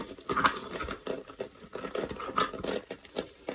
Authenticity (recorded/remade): recorded